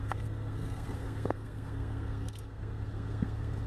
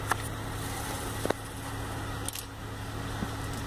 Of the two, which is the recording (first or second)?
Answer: second